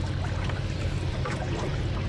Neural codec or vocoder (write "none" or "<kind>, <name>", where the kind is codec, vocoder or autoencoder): none